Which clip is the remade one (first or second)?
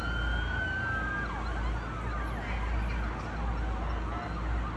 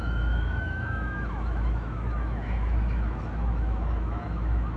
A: second